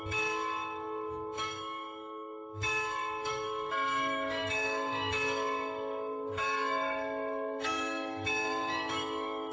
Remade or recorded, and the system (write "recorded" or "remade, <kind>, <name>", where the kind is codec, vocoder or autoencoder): remade, codec, DAC